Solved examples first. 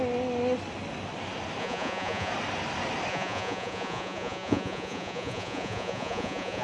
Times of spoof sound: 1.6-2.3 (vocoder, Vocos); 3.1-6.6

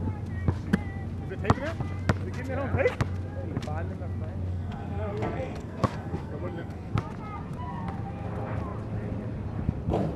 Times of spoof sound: 4.5-6.9 (codec, SNAC)

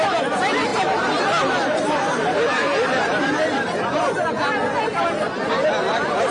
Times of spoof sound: 0.7-4.5 (vocoder, BigVGAN v2)

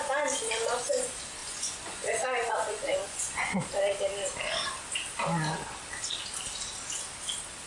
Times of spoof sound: 1.4-3.4 (vocoder, Vocos)

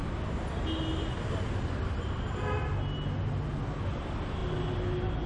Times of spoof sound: none

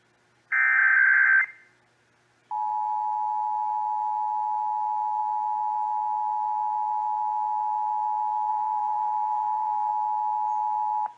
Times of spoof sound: 8.5-9.9 (vocoder, BigVGAN v2)